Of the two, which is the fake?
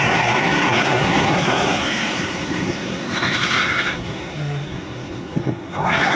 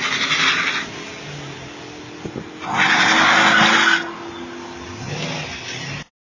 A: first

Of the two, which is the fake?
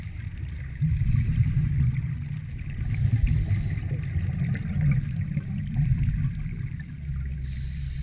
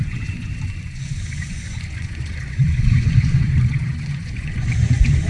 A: second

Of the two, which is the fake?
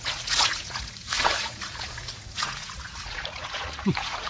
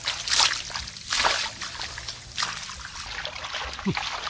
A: first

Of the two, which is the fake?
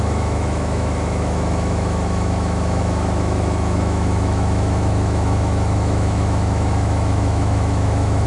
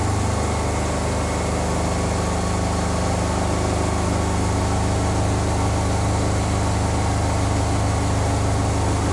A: first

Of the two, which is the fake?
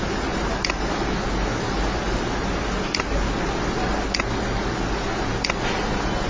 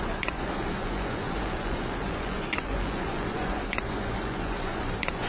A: second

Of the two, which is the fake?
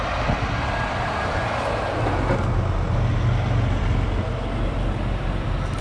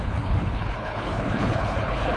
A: second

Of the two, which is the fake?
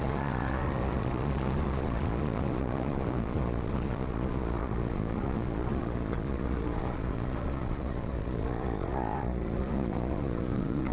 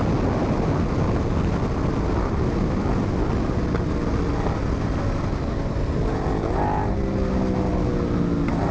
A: first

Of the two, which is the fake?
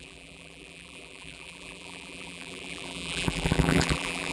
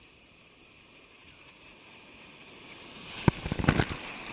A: first